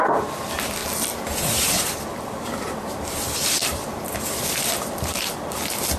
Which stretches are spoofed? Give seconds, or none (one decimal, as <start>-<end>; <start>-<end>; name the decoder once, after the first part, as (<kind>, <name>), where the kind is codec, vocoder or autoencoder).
0.0-0.8 (vocoder, BigVGAN v2); 1.8-6.0